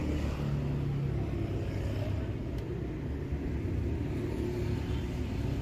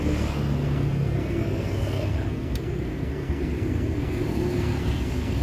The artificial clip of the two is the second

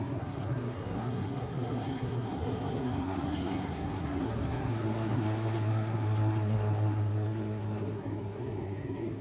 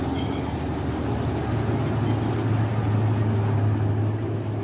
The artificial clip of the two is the first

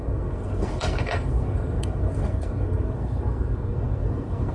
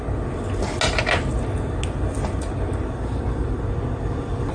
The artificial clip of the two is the first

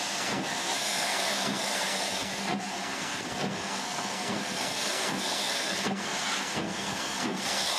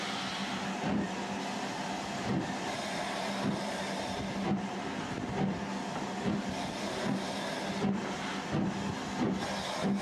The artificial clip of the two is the first